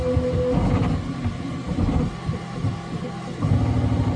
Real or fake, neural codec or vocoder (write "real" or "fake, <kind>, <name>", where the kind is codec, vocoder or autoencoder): real